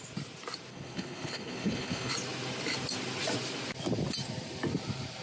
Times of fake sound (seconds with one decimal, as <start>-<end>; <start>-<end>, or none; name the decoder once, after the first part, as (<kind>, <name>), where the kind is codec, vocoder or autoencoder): 0.7-2.1 (codec, HILCodec)